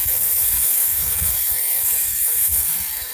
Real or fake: fake